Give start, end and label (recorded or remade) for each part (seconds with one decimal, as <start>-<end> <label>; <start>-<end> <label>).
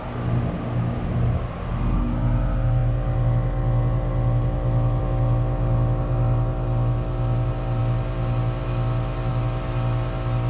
0.0-10.5 recorded